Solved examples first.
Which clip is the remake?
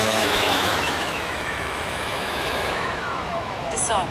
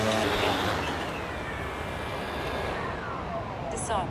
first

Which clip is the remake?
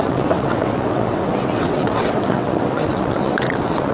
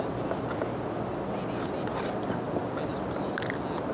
first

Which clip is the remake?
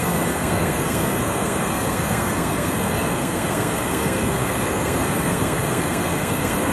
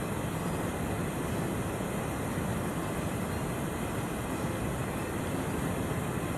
first